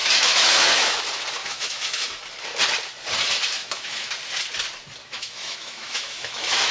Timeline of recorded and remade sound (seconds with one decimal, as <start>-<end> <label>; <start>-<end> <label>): 0.0-1.0 remade; 1.0-1.4 recorded; 1.4-2.2 remade; 2.2-3.6 recorded; 3.6-4.1 remade; 4.1-5.0 recorded; 5.0-6.7 remade